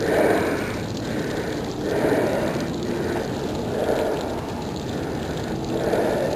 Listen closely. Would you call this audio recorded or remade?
recorded